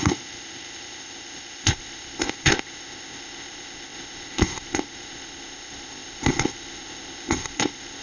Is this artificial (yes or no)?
yes